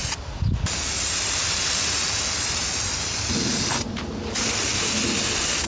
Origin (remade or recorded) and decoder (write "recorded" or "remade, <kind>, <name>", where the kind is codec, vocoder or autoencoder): recorded